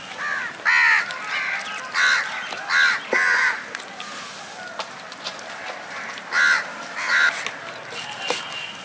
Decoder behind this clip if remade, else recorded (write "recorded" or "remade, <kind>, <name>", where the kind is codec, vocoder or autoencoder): recorded